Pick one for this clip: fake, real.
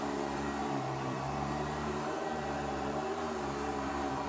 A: fake